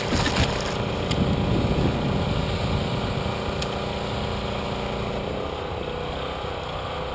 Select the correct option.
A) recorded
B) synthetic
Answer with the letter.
A